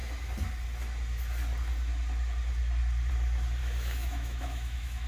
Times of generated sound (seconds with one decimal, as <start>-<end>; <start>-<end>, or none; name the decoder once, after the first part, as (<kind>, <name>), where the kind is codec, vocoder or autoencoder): 3.6-5.1 (autoencoder, DAC-VAE)